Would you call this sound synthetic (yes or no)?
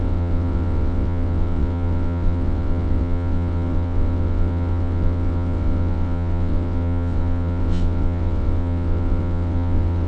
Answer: yes